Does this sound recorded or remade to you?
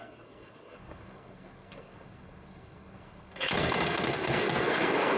remade